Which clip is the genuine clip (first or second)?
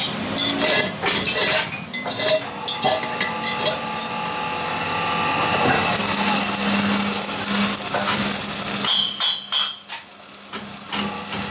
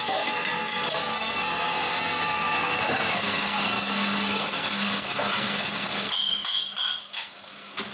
first